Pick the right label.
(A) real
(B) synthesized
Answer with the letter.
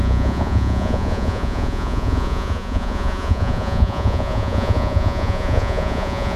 B